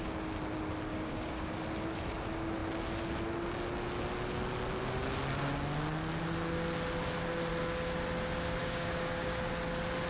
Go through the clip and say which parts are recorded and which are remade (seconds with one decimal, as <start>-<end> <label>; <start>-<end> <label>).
0.0-0.9 recorded; 0.9-1.5 remade; 1.5-8.6 recorded; 8.6-9.5 remade; 9.5-10.1 recorded